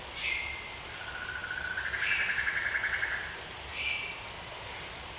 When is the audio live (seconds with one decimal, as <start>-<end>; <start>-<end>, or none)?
0.0-5.2